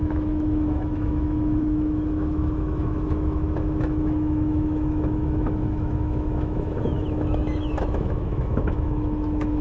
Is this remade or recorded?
remade